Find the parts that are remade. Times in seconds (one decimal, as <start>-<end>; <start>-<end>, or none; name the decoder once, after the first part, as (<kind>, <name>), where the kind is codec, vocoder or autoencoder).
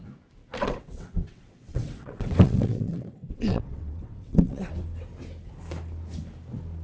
0.6-4.7 (vocoder, WaveNeXt)